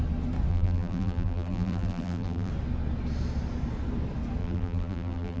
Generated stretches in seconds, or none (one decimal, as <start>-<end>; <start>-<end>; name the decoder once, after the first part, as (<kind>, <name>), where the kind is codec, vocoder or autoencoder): 0.5-2.5 (vocoder, BigVGAN v2); 4.4-5.4

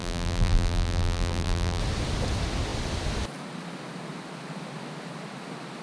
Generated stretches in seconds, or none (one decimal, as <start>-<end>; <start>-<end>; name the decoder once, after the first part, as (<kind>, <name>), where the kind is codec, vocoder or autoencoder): 0.0-1.8 (vocoder, BigVGAN v2)